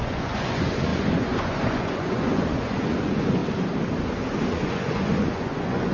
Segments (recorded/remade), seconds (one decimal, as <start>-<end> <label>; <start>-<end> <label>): 0.0-3.4 remade; 3.4-4.5 recorded; 4.5-5.9 remade